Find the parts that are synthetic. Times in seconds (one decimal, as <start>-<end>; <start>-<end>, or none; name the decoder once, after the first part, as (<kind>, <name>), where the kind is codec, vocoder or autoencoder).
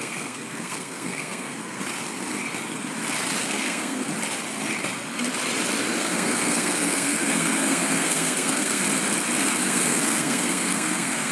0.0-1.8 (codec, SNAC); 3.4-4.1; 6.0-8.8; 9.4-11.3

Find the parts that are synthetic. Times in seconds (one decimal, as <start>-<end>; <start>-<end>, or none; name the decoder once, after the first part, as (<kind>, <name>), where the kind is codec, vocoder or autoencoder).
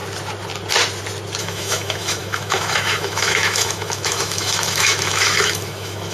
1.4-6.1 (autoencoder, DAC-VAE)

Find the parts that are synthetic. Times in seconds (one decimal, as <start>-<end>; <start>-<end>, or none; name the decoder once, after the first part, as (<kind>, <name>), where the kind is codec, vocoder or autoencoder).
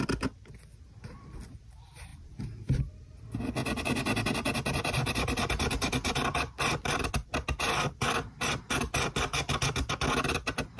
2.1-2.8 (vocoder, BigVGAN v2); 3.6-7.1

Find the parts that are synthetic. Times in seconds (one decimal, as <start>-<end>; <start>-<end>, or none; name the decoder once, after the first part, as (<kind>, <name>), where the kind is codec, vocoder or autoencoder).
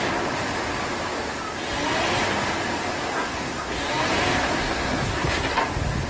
3.1-3.8 (codec, SNAC); 4.4-5.5